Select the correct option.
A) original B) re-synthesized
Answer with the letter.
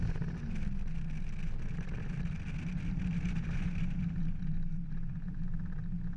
A